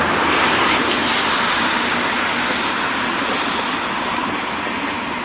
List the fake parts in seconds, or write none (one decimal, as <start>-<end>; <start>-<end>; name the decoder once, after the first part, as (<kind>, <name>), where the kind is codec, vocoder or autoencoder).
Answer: none